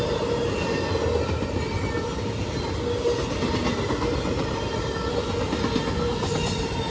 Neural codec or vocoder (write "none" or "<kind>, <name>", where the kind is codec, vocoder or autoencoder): none